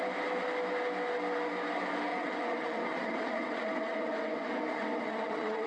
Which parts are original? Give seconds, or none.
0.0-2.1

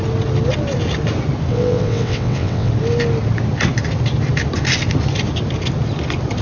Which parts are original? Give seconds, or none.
0.0-1.5; 2.7-6.4